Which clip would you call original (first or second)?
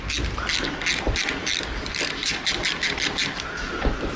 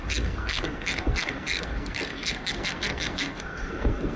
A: first